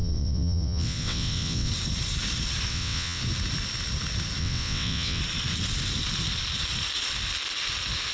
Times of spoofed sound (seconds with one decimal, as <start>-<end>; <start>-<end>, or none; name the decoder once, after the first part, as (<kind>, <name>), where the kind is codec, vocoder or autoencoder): 0.0-1.7 (vocoder, WaveNeXt); 2.7-3.2; 4.4-5.2